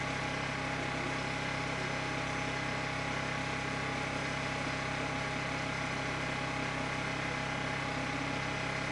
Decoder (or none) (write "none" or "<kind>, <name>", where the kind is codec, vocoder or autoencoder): none